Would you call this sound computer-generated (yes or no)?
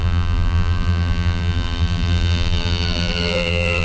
yes